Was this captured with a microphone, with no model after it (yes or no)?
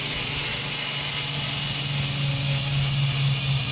yes